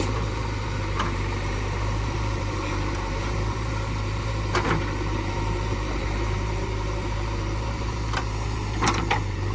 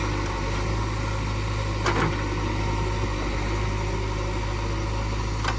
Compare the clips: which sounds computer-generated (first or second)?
first